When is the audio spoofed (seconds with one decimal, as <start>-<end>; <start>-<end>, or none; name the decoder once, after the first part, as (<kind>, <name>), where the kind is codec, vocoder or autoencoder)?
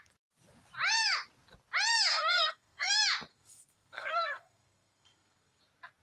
2.1-2.9 (codec, SNAC); 3.3-5.6